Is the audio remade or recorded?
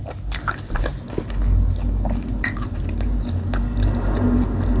recorded